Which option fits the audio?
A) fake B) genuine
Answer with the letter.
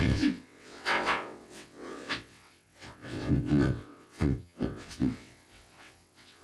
A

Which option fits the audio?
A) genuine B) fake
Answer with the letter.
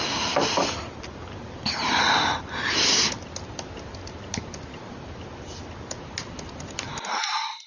A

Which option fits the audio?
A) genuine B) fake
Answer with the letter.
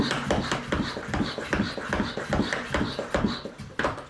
A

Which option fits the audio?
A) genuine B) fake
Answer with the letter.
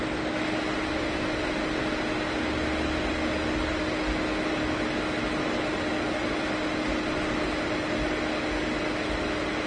A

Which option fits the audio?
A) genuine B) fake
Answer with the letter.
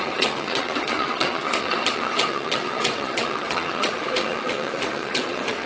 B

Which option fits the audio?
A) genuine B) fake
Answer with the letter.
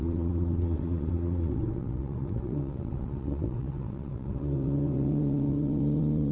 B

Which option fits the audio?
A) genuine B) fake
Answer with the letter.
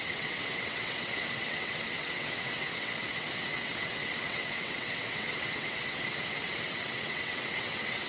B